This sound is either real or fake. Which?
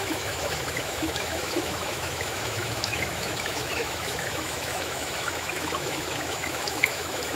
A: fake